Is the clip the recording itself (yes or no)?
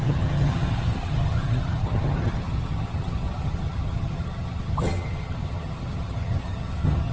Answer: no